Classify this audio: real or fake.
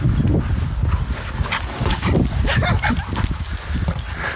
real